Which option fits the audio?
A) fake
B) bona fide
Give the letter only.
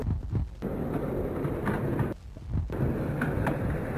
B